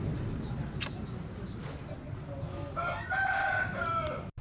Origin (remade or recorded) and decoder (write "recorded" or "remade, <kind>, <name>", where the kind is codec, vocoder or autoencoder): recorded